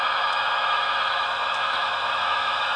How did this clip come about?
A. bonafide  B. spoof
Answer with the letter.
B